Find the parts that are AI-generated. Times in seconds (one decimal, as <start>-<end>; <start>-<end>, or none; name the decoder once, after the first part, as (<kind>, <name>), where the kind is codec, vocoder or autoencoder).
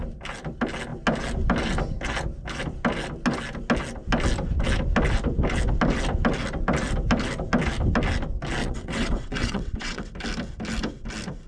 8.6-10.1 (vocoder, WaveNeXt)